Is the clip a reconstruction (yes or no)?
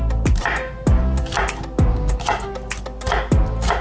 no